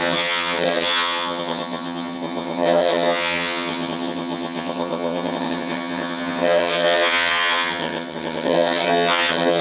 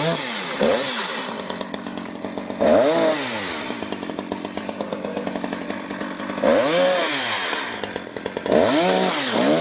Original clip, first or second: second